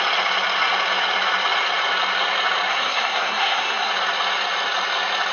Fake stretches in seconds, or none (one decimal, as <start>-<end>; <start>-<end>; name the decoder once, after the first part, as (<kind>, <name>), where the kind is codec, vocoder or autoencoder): 2.7-3.9 (codec, SNAC)